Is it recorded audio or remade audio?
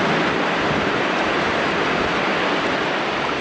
recorded